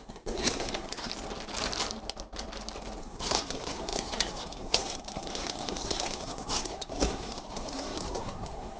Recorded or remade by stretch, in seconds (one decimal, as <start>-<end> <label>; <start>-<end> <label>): 0.0-1.1 remade; 1.1-3.0 recorded; 3.0-8.8 remade